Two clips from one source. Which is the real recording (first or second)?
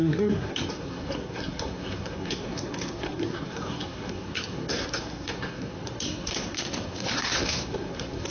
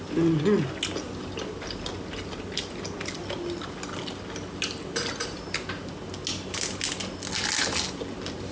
second